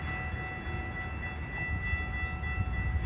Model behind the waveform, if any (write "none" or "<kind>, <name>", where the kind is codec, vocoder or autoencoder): none